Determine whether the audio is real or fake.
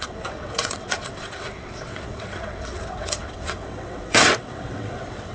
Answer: fake